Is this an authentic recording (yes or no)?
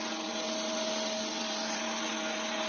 yes